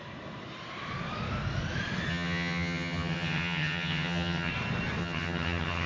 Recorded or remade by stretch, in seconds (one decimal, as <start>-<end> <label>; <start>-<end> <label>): 0.0-2.1 recorded; 2.1-4.5 remade; 4.5-5.0 recorded; 5.0-5.9 remade